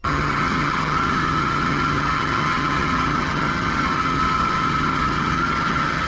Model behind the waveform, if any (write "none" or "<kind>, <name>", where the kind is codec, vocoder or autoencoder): vocoder, HiFi-GAN